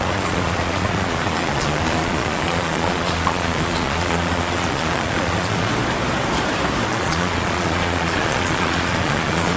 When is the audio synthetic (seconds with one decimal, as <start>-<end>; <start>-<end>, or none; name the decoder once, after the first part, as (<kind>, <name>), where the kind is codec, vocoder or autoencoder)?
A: 0.0-5.7 (vocoder, Vocos); 6.9-9.6

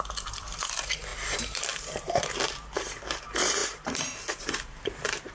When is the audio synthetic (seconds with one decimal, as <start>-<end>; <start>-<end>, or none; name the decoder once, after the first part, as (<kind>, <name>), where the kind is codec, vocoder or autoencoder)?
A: 0.0-5.3 (vocoder, BigVGAN v2)

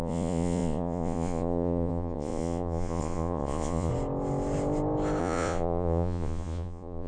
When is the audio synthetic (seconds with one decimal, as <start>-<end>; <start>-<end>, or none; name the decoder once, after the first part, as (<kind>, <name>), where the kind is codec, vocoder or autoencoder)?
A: 0.0-3.9 (vocoder, Vocos); 5.2-7.1

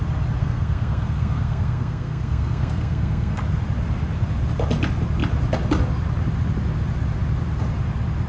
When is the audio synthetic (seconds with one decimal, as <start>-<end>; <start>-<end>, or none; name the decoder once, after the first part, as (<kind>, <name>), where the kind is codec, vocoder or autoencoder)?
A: 0.4-3.4 (codec, SNAC)